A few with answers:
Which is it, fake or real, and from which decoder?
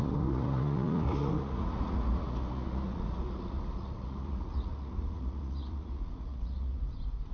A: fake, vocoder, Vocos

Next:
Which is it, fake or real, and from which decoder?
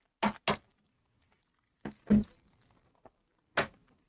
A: real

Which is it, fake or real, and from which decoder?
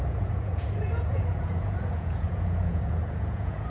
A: fake, vocoder, Vocos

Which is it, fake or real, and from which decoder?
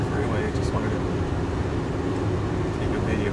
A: real